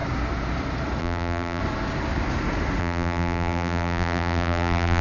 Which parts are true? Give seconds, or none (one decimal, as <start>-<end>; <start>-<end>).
0.0-1.0; 1.6-2.8